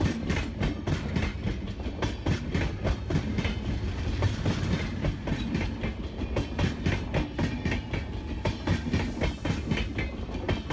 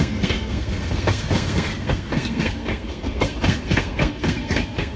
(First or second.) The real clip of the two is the first